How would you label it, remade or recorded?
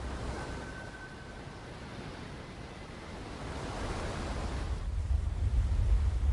recorded